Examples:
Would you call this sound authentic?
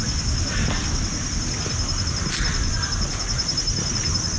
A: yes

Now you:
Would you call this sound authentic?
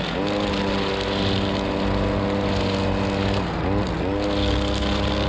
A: yes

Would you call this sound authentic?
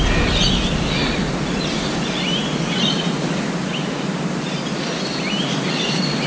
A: yes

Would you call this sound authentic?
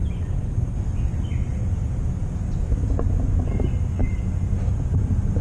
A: yes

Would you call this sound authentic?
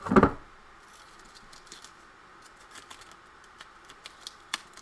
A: yes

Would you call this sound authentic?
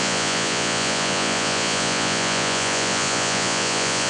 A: no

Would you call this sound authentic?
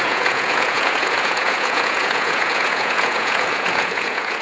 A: no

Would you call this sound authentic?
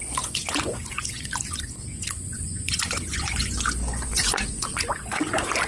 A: no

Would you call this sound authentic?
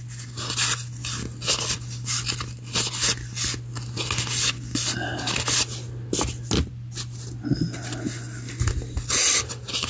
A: yes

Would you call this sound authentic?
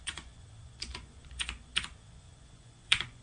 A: no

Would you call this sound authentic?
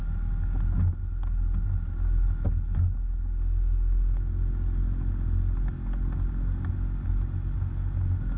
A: yes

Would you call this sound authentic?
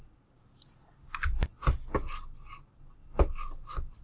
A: yes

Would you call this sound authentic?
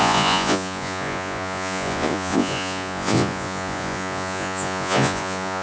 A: no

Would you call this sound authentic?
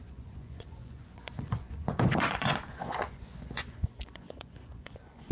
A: no